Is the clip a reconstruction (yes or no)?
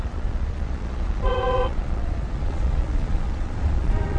yes